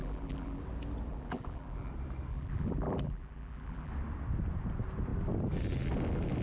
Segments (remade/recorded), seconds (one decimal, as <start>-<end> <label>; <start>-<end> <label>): 0.0-0.6 remade; 0.6-1.1 recorded; 1.1-1.9 remade; 1.9-2.3 recorded; 2.3-3.9 remade; 3.9-6.4 recorded

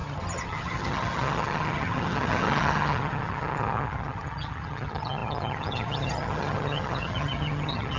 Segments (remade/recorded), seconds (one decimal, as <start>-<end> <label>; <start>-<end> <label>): 0.0-8.0 remade

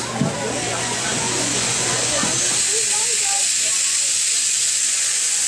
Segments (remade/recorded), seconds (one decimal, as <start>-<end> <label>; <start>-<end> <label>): 0.0-0.7 recorded; 0.7-2.3 remade; 2.3-3.4 recorded; 3.4-5.5 remade

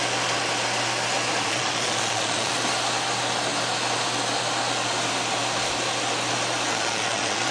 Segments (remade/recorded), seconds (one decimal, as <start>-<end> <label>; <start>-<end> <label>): 0.0-1.5 recorded; 1.5-2.5 remade; 2.5-6.7 recorded; 6.7-7.5 remade

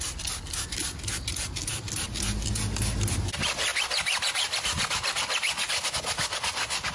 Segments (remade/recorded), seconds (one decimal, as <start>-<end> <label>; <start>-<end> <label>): 0.0-1.6 recorded; 1.6-2.5 remade; 2.5-3.7 recorded; 3.7-5.8 remade; 5.8-6.9 recorded

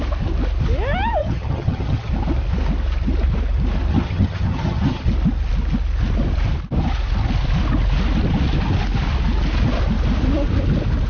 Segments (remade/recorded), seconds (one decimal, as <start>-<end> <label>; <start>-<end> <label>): 0.0-1.2 recorded; 1.2-2.1 remade; 2.1-3.9 recorded; 3.9-5.1 remade; 5.1-11.1 recorded

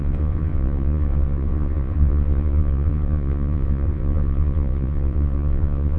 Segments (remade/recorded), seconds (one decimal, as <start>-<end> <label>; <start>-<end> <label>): 0.0-6.0 remade

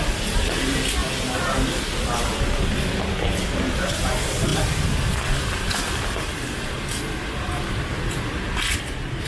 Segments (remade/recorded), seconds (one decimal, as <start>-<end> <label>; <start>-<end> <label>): 0.0-9.3 recorded